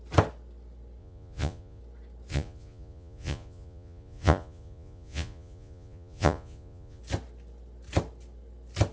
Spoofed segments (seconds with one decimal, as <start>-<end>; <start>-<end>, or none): 1.0-1.8; 2.3-7.0